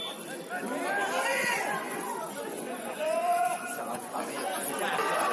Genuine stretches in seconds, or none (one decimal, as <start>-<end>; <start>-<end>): 0.0-1.3; 4.5-5.3